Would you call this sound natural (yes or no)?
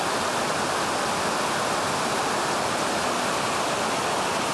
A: yes